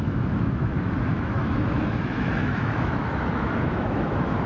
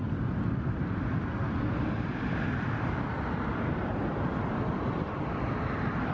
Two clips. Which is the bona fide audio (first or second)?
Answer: second